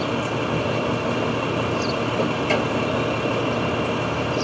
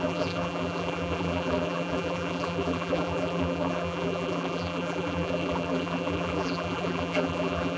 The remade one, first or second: second